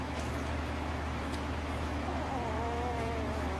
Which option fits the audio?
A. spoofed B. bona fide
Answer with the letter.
A